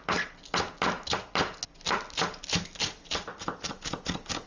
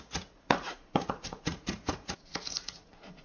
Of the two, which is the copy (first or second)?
second